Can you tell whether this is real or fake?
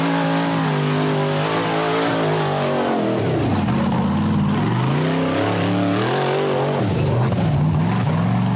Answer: real